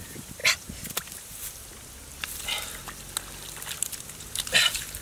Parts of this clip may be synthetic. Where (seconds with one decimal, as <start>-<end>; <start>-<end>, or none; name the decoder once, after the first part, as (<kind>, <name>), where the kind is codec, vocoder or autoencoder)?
0.0-0.4 (vocoder, BigVGAN v2); 1.0-1.6; 4.6-5.0